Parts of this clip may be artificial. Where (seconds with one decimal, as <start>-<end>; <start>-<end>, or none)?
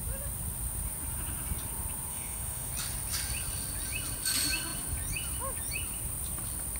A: 2.1-2.7